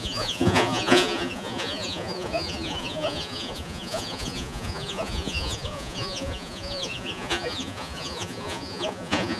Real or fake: fake